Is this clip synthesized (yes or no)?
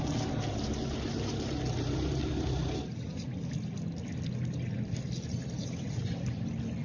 no